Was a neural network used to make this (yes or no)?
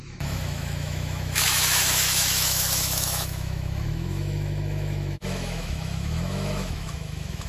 yes